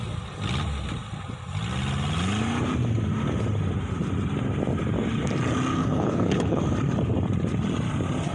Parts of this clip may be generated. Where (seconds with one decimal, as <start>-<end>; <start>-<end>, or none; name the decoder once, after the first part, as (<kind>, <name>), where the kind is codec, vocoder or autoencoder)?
5.8-6.6 (codec, HILCodec)